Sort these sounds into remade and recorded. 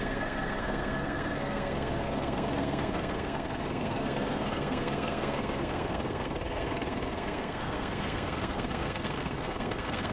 remade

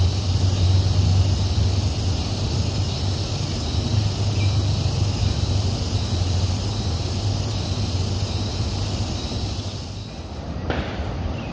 recorded